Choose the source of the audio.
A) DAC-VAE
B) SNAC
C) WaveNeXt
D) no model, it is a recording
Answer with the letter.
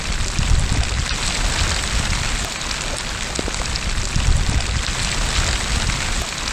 D